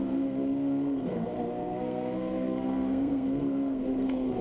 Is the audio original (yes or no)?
no